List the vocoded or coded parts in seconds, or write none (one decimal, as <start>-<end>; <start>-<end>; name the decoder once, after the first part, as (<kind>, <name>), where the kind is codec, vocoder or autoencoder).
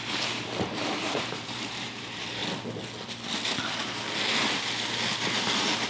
0.0-2.4 (vocoder, BigVGAN v2)